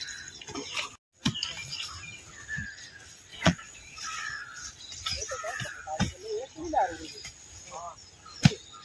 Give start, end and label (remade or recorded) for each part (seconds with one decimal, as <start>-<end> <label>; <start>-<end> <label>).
0.0-3.3 recorded; 3.3-4.8 remade; 4.8-8.8 recorded